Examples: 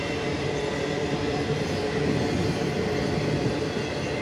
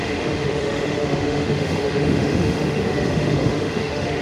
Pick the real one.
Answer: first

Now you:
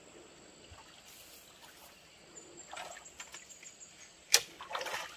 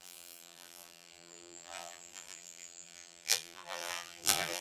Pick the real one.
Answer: first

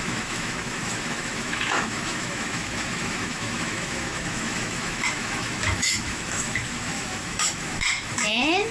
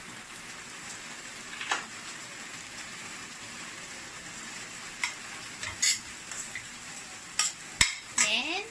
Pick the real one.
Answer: second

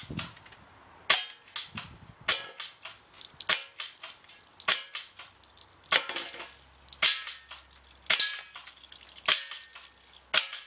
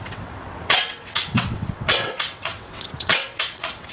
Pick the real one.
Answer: first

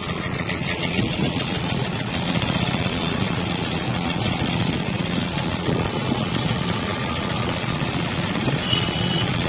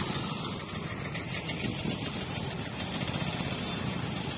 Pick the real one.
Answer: second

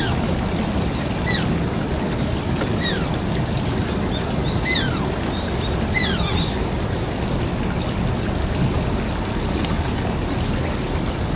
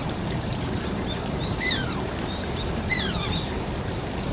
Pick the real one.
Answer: first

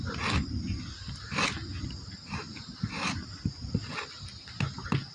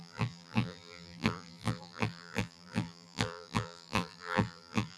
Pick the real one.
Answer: first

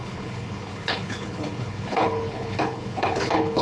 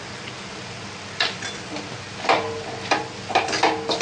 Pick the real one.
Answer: second